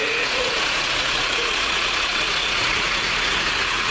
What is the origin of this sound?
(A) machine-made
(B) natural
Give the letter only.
A